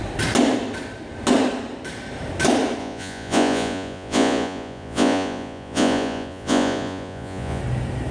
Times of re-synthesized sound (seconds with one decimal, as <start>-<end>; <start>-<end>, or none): 2.8-7.6